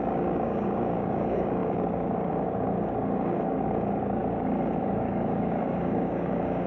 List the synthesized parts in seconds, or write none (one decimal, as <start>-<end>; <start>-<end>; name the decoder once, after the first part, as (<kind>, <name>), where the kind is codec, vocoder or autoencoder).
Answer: 0.0-4.2 (codec, DAC); 4.8-6.7